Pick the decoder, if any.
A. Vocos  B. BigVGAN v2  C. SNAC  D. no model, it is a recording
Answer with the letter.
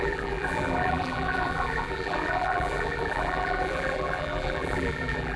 B